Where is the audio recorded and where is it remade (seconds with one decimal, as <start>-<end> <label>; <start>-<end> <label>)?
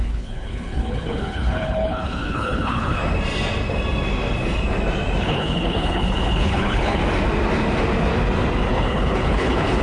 0.0-3.0 remade; 3.0-5.2 recorded; 5.2-7.0 remade; 7.0-8.7 recorded; 8.7-9.8 remade